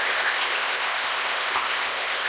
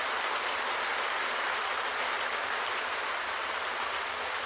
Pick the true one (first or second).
second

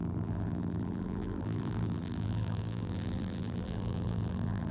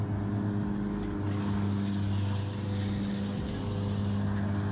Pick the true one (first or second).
second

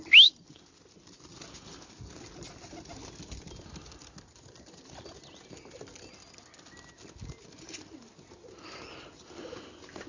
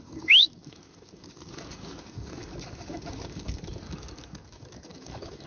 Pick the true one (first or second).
first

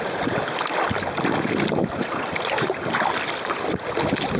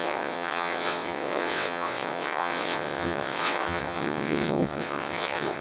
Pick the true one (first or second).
first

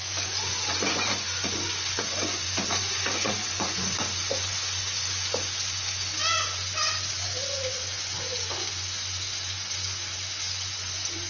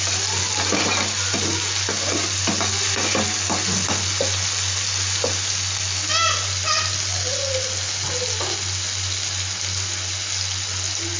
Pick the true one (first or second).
second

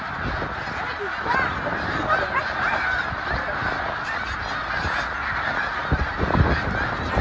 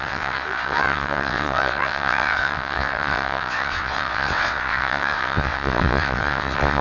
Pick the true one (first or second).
first